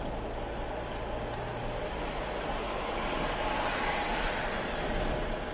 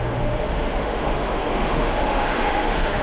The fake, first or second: second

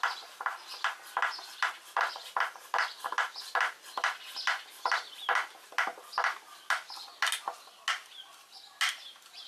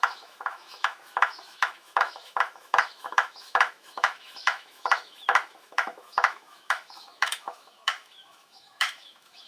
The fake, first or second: second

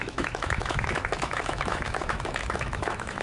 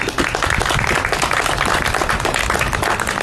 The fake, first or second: first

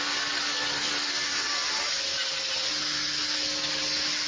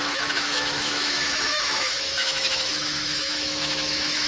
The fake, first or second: second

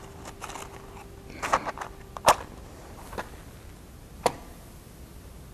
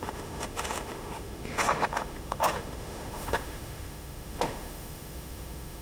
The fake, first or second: second